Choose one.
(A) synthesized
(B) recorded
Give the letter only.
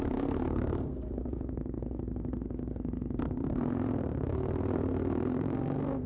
A